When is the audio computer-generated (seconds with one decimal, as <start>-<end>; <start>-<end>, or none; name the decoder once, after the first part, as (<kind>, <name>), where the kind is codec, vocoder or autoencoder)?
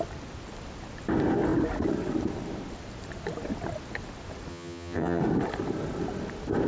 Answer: 4.5-5.2 (vocoder, HiFi-GAN)